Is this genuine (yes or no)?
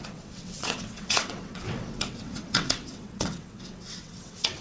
no